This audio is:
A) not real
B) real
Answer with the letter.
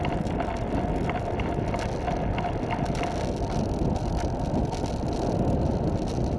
B